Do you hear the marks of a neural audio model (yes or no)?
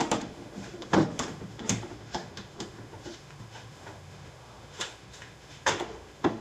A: yes